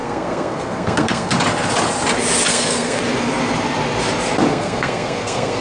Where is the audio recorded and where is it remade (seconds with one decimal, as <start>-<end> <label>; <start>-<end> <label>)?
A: 0.0-1.3 remade; 1.3-2.5 recorded; 2.5-3.0 remade; 3.0-4.5 recorded; 4.5-5.6 remade

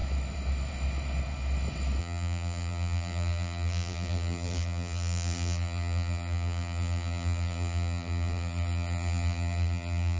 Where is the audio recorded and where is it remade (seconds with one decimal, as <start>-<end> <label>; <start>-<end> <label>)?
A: 0.0-2.0 recorded; 2.0-10.2 remade

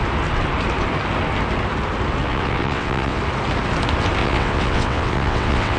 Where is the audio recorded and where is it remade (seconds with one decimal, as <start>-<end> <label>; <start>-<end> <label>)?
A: 0.0-2.2 recorded; 2.2-3.2 remade; 3.2-4.2 recorded; 4.2-5.8 remade

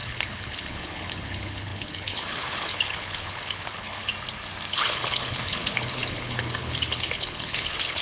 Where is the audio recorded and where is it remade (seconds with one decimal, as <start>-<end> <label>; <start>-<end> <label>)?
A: 0.0-4.1 remade; 4.1-4.7 recorded; 4.7-8.0 remade

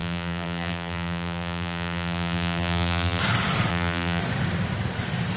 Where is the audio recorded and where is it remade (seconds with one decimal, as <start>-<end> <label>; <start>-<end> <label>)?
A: 0.0-3.2 remade; 3.2-3.7 recorded; 3.7-4.2 remade; 4.2-5.4 recorded

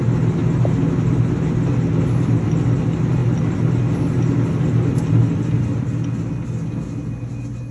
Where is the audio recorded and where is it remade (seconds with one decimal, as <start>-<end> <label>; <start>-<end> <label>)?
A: 0.0-7.7 recorded

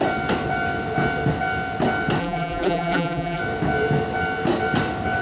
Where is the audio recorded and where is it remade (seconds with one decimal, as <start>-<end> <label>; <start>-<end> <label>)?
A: 0.0-2.2 recorded; 2.2-3.4 remade; 3.4-5.2 recorded